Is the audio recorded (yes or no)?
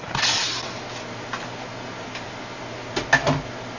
yes